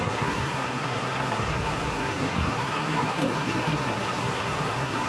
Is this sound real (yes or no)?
no